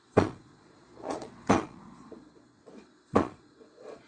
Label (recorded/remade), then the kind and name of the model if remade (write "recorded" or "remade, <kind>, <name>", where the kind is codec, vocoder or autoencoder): remade, vocoder, Vocos